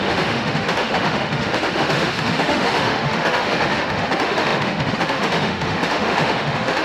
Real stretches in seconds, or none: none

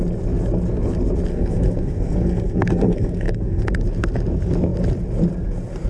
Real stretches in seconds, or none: 0.0-1.3; 3.7-5.9

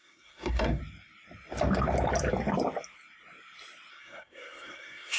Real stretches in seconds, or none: 0.8-3.9

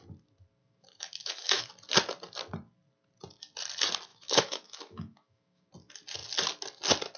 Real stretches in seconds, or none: 0.0-0.6; 1.7-4.1; 5.7-7.2